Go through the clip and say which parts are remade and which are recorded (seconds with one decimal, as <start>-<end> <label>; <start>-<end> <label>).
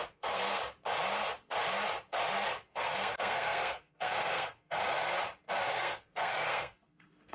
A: 0.0-0.6 remade; 0.6-2.7 recorded; 2.7-4.8 remade; 4.8-5.7 recorded; 5.7-7.3 remade